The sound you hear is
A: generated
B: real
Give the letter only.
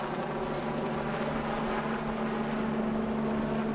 B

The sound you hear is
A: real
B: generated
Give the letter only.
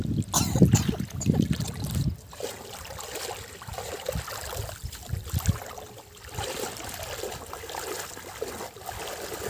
A